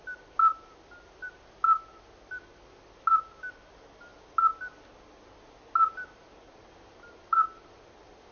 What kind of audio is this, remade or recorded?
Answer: recorded